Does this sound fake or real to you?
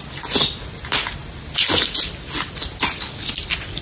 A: real